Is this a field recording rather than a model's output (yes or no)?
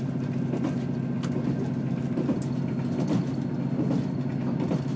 yes